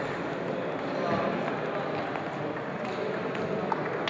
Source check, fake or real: real